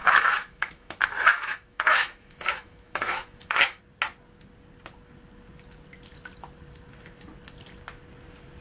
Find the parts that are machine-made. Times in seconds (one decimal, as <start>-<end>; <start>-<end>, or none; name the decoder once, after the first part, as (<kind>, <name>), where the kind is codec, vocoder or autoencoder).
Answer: 0.0-3.8 (autoencoder, DAC-VAE)